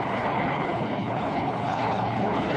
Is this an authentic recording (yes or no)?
no